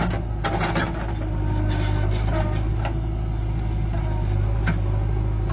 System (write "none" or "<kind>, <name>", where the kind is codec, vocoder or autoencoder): none